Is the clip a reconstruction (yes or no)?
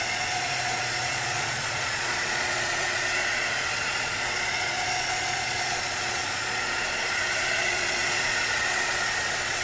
yes